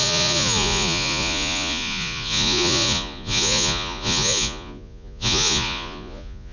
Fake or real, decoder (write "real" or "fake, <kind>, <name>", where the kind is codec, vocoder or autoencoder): fake, vocoder, Vocos